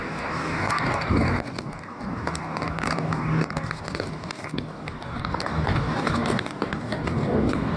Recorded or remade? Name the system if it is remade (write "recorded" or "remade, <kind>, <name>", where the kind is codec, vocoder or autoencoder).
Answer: remade, codec, DAC